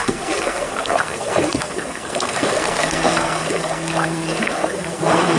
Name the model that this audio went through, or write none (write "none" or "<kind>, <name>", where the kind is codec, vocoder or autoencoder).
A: codec, SNAC